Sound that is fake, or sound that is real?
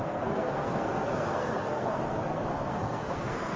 fake